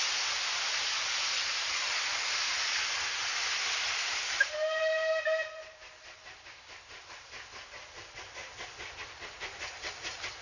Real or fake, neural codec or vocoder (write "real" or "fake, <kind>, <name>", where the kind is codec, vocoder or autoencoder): real